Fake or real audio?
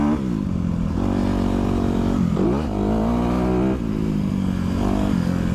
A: real